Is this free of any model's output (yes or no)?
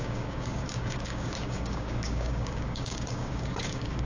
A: no